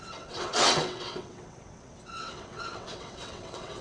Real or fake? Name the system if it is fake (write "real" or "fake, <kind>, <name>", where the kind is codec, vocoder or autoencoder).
fake, vocoder, WaveNeXt